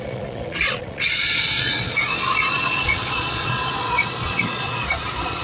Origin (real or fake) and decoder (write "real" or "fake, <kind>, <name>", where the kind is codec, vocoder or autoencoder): fake, vocoder, Vocos